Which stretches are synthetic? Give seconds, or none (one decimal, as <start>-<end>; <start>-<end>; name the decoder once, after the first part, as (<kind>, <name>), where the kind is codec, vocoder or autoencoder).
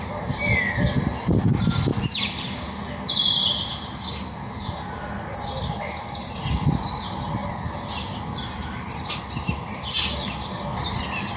none